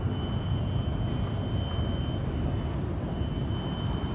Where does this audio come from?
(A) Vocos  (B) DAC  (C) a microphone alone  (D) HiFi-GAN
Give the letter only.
C